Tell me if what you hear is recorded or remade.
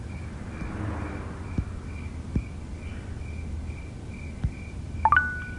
recorded